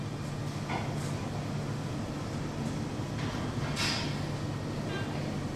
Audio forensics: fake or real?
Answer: real